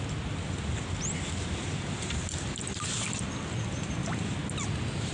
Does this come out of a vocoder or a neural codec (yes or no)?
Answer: no